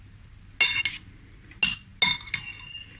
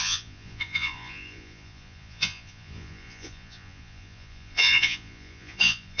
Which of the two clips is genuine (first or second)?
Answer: first